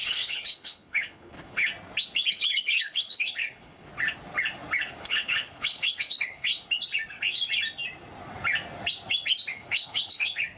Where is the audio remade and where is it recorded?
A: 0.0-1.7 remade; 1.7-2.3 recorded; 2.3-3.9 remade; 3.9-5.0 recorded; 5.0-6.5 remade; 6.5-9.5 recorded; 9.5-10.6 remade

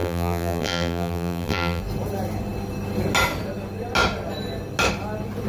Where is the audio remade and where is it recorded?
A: 0.0-1.8 remade; 1.8-5.5 recorded

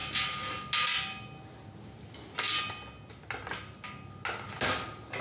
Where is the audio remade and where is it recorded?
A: 0.0-5.2 recorded

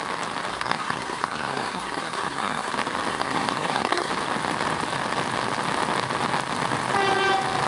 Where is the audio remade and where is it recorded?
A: 0.0-0.5 recorded; 0.5-2.7 remade; 2.7-3.1 recorded; 3.1-4.1 remade; 4.1-7.7 recorded

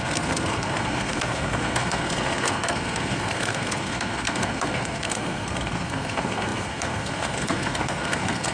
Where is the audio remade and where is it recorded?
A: 0.0-8.5 remade

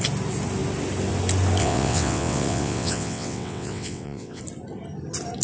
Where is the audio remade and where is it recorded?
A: 0.0-1.6 recorded; 1.6-4.4 remade; 4.4-5.4 recorded